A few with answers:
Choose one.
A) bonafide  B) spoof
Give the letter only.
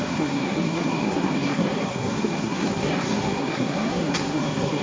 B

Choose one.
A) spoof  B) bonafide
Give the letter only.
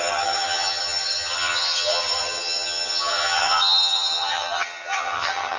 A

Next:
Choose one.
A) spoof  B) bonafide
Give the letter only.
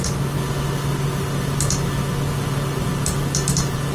B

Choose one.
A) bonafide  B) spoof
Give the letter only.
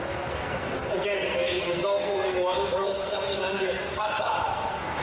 B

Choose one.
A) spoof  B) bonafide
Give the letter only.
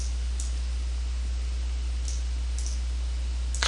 B